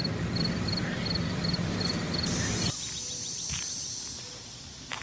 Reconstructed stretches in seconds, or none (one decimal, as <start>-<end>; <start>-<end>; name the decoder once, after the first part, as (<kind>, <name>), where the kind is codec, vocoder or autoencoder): none